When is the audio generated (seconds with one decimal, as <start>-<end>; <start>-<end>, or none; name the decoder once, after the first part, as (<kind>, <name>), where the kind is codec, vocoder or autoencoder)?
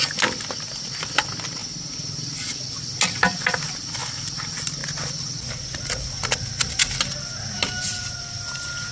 none